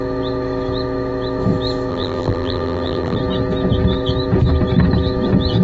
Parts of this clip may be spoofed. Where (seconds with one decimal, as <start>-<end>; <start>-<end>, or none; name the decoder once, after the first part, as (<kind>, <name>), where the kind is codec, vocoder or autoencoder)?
1.9-3.2 (vocoder, BigVGAN v2)